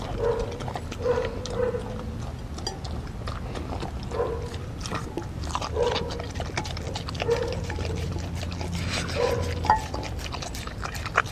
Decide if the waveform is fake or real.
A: real